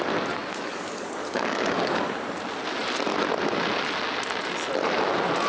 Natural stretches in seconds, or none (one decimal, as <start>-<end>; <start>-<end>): 0.0-0.5; 2.0-5.5